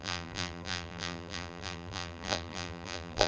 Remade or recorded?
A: remade